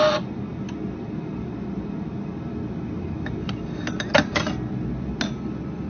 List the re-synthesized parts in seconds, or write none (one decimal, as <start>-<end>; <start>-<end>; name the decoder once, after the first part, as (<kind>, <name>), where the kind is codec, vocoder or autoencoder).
none